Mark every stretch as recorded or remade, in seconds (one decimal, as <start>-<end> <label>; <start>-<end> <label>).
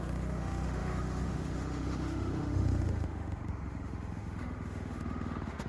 0.0-5.7 remade